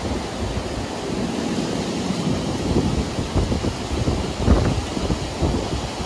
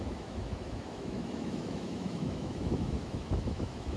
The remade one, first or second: second